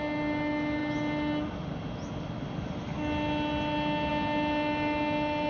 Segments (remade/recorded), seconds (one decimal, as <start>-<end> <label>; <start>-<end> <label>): 0.0-5.5 recorded